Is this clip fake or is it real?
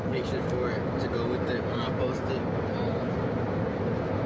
real